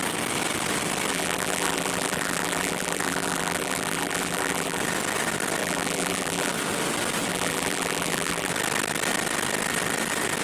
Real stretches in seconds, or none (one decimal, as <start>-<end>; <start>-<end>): 0.0-1.1; 4.8-5.6; 6.5-7.3; 8.5-10.4